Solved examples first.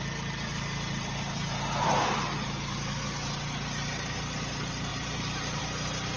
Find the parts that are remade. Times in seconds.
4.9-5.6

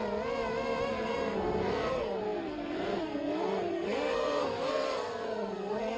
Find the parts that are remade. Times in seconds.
0.9-6.0

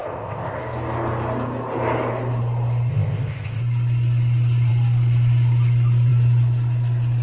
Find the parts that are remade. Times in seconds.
0.0-0.6; 2.9-3.6

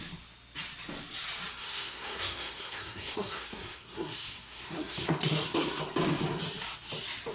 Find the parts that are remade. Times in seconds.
1.5-5.8